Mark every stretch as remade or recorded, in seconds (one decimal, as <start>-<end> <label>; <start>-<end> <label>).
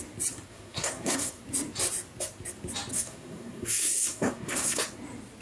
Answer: 0.0-0.5 recorded; 0.5-1.4 remade; 1.4-2.9 recorded; 2.9-4.8 remade; 4.8-5.4 recorded